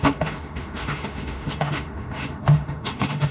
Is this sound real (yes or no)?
no